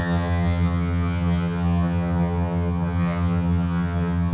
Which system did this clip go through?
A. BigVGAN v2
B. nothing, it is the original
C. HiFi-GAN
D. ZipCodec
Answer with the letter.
C